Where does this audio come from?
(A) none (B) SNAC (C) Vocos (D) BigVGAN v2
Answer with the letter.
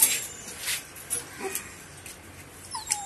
A